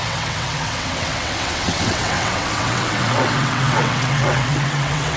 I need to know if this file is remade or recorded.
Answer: remade